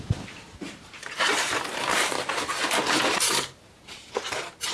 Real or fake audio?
fake